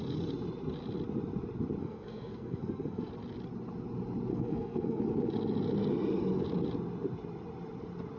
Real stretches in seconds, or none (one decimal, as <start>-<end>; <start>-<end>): 0.0-1.8; 3.1-4.3; 5.0-8.2